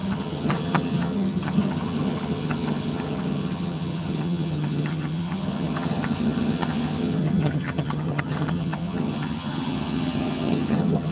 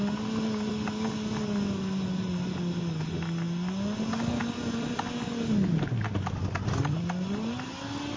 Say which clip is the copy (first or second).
first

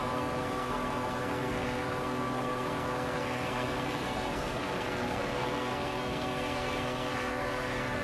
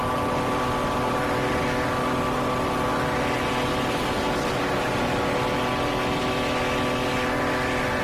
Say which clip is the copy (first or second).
first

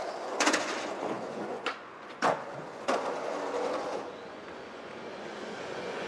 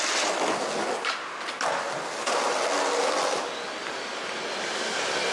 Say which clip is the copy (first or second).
first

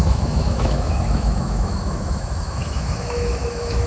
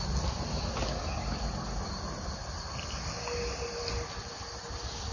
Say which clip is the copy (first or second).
first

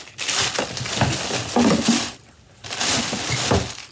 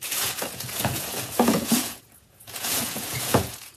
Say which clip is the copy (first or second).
second